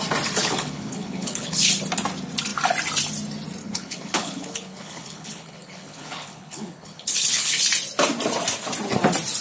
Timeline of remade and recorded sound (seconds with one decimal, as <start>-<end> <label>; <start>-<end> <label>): 0.0-0.4 recorded; 0.4-1.7 remade; 1.7-3.6 recorded; 3.6-7.6 remade; 7.6-9.4 recorded